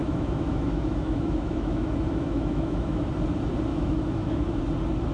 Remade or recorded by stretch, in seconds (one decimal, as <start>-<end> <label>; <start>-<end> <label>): 0.0-3.1 remade; 3.1-3.7 recorded; 3.7-4.6 remade; 4.6-5.1 recorded